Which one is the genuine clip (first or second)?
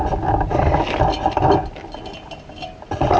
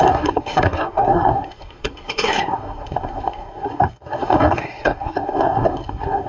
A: first